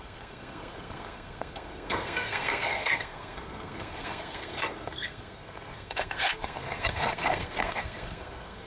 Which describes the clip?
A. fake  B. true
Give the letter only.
A